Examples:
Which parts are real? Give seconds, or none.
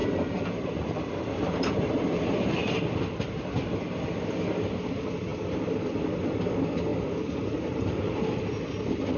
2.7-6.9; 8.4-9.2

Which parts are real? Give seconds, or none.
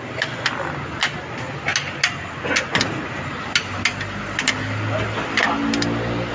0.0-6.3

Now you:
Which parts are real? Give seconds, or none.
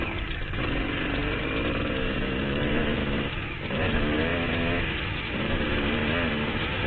1.2-2.4; 3.0-3.6; 4.3-5.1; 6.0-6.9